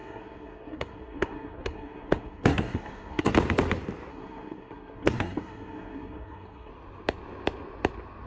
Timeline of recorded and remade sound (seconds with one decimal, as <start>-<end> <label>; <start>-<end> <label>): 0.0-3.3 remade; 3.3-4.1 recorded; 4.1-6.7 remade; 6.7-8.3 recorded